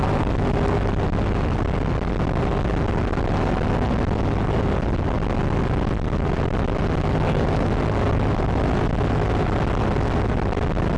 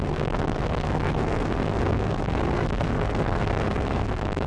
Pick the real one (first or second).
first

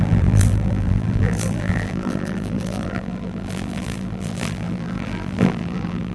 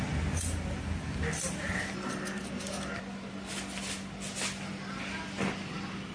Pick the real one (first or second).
second